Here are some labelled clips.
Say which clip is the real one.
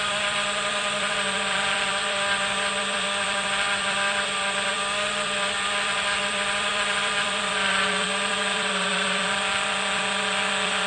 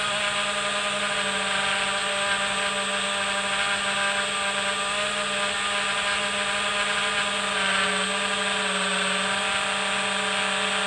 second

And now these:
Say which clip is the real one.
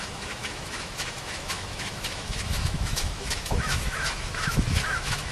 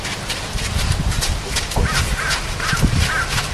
second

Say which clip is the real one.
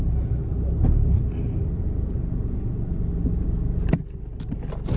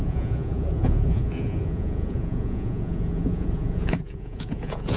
first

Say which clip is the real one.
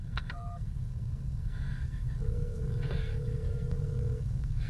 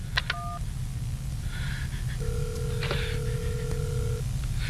second